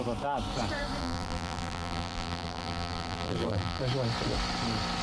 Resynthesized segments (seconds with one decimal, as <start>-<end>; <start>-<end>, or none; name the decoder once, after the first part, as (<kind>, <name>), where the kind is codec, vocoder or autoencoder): 1.0-3.8 (vocoder, BigVGAN v2)